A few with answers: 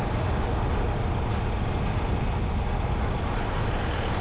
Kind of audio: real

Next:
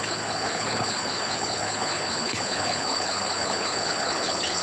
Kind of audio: fake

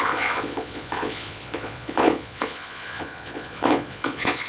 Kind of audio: fake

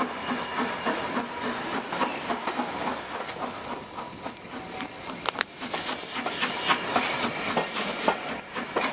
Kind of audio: real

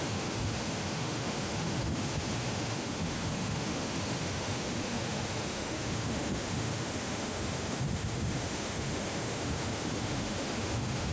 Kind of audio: fake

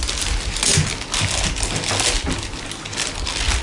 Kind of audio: real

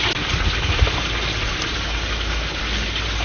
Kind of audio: real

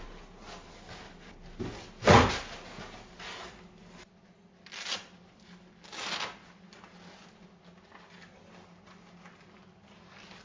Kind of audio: real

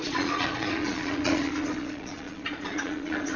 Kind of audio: fake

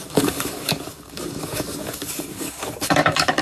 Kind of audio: fake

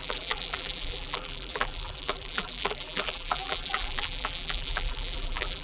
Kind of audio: fake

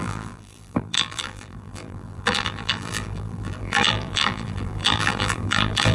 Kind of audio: fake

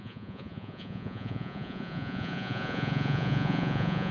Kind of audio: fake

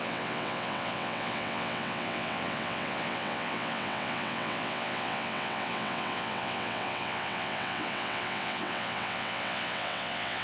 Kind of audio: fake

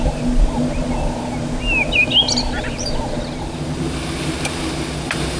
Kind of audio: real